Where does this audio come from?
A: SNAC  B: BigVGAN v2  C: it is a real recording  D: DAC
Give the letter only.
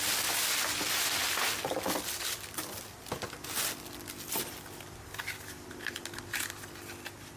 C